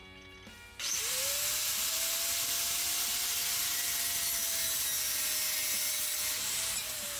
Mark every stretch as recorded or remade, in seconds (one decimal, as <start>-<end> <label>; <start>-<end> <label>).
0.0-0.8 recorded; 0.8-4.6 remade; 4.6-5.9 recorded; 5.9-7.2 remade